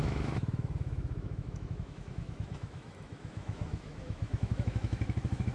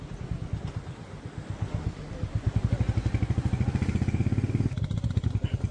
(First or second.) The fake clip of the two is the first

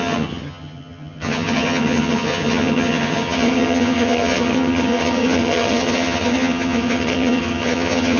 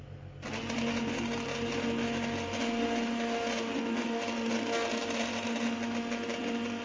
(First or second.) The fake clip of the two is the first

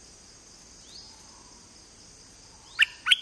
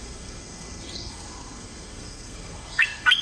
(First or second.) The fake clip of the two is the second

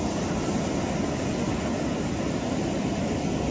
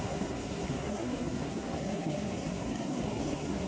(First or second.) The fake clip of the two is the second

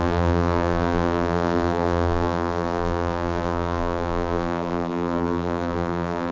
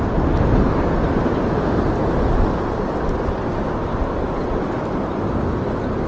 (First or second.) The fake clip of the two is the first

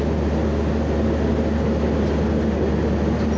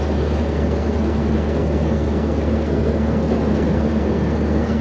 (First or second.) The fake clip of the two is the second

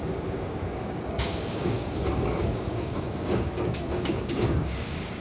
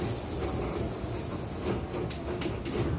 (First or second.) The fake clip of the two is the first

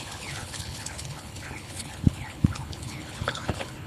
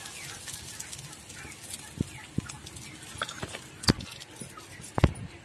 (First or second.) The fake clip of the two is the first